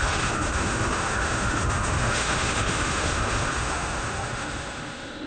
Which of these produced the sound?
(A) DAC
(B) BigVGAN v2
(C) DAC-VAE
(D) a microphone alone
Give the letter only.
C